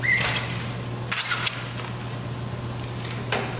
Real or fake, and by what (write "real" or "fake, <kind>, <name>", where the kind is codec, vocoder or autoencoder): real